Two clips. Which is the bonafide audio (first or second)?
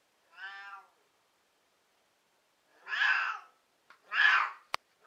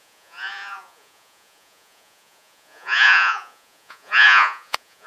first